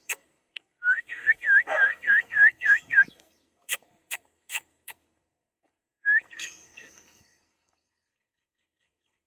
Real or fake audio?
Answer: fake